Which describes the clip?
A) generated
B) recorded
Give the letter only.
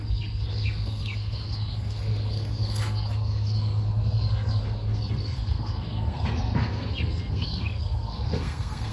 A